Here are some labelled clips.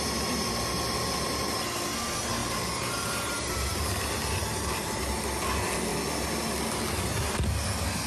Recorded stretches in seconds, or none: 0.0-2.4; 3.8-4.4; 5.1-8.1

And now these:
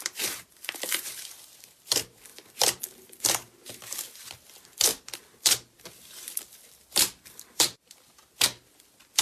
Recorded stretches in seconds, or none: none

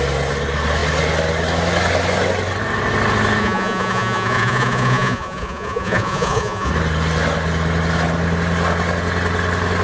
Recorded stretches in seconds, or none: 0.0-3.4; 6.7-9.8

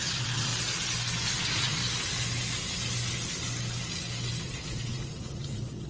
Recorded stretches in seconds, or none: 0.5-1.4; 1.8-4.4

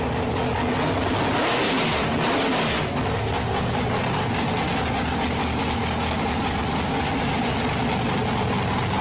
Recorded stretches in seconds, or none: 0.0-9.0

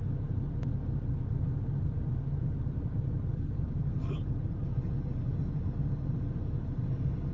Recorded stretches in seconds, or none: 0.0-7.3

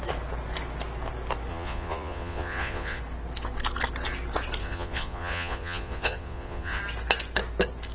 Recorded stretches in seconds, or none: 0.0-1.5; 3.0-4.6; 6.8-7.9

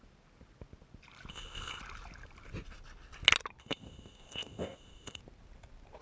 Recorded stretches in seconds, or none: 0.0-1.3; 1.8-3.6; 5.2-6.0